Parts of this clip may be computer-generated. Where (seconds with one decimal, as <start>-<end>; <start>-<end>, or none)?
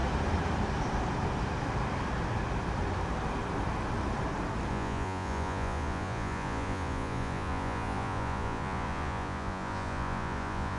4.7-10.8